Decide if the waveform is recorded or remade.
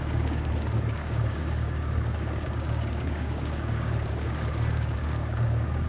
remade